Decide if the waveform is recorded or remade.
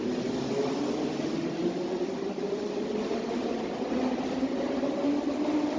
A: recorded